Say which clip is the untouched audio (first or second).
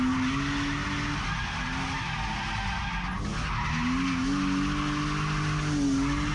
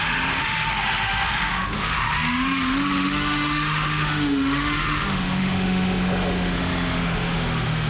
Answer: first